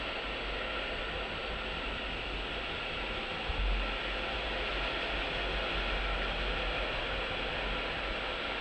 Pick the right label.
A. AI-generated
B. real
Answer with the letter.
B